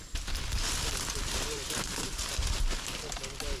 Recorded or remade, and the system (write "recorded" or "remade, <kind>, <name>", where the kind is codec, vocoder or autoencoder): recorded